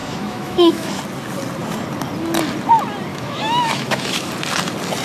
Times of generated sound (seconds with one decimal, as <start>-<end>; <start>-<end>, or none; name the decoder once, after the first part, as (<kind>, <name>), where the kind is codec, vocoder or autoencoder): 0.0-1.0 (autoencoder, DAC-VAE); 3.1-4.3